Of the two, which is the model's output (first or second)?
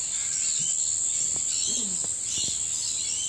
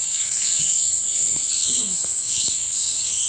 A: second